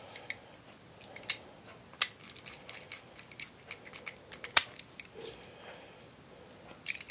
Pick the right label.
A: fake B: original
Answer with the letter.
B